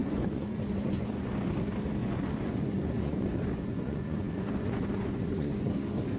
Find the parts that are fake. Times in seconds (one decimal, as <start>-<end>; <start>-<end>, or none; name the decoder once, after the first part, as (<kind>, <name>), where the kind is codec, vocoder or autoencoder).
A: 0.0-1.3 (vocoder, Vocos); 2.0-5.7